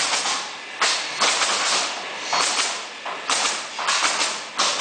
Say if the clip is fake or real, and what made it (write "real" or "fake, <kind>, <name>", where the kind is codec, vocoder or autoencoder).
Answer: real